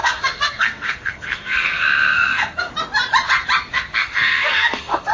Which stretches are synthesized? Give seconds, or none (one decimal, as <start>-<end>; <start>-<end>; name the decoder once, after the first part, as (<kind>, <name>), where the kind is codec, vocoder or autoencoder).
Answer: 0.0-2.7 (codec, SNAC); 3.7-5.1